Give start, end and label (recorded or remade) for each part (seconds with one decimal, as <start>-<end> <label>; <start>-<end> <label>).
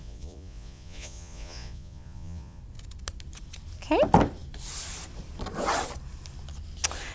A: 0.0-2.6 remade; 2.6-7.1 recorded